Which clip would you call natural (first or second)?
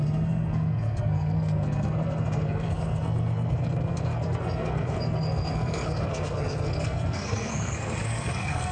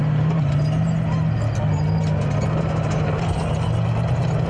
second